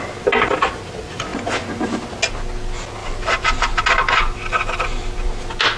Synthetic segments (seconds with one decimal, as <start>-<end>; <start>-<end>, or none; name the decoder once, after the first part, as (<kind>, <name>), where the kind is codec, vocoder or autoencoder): 3.0-3.8 (vocoder, BigVGAN v2)